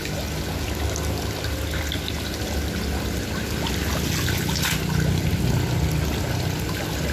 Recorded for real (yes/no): yes